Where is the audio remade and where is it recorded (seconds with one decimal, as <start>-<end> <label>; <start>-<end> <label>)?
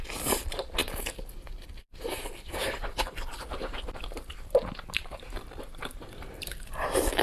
0.0-0.8 remade; 0.8-1.8 recorded; 1.8-7.2 remade